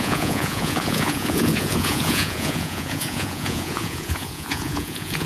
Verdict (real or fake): fake